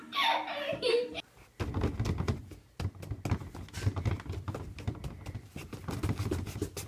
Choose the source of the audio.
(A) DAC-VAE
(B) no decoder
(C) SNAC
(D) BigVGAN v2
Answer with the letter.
B